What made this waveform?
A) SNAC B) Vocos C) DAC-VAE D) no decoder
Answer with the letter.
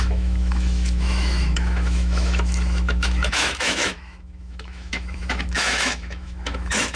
C